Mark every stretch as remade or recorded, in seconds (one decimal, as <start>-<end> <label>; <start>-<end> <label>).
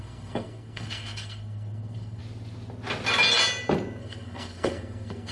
0.0-2.2 remade; 2.2-4.0 recorded; 4.0-5.3 remade